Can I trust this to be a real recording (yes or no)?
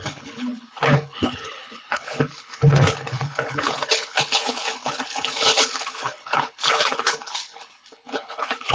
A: no